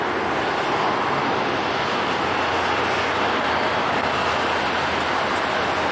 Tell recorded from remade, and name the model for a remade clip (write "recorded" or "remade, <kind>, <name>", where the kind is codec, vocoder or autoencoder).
recorded